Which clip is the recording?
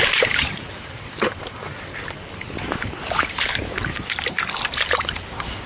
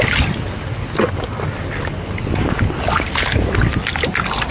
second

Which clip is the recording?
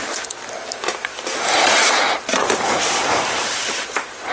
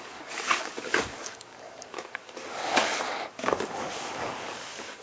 first